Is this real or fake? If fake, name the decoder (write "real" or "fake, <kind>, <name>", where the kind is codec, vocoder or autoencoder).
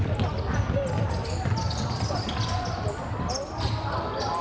real